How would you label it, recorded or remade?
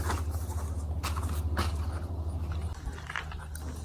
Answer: recorded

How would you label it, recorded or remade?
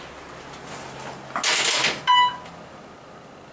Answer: recorded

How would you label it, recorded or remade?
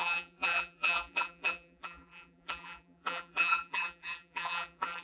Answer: remade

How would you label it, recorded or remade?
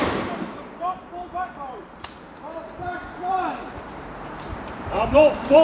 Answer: remade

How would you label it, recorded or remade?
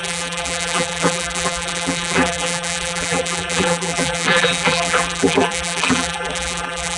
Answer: remade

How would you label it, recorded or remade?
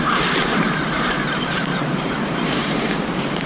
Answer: remade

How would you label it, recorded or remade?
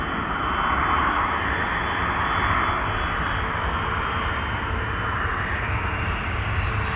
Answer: recorded